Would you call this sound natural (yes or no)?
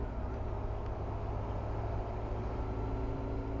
yes